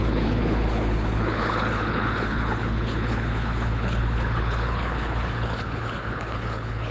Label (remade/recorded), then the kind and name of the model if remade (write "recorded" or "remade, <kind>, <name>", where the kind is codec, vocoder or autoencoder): remade, codec, HILCodec